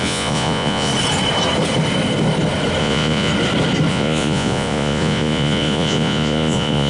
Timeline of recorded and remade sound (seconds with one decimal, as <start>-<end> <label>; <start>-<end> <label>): 0.0-0.9 remade; 0.9-2.8 recorded; 2.8-3.3 remade; 3.3-3.9 recorded; 3.9-6.9 remade